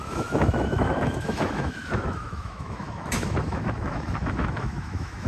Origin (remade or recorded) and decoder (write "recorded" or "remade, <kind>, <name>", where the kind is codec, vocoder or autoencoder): remade, autoencoder, DAC-VAE